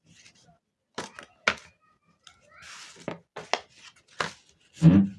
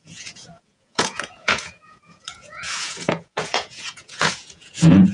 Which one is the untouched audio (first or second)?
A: first